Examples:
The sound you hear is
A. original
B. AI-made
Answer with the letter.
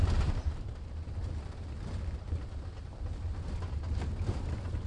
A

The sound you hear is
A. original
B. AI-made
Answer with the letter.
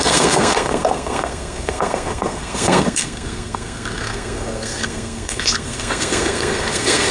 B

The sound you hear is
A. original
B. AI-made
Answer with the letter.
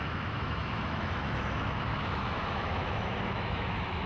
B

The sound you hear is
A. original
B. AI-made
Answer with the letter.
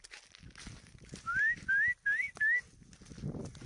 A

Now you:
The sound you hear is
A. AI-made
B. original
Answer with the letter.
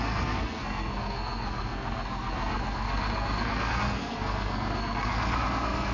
A